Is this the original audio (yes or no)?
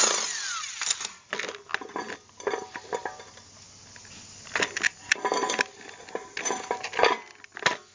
yes